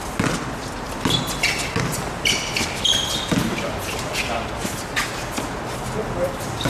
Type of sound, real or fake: real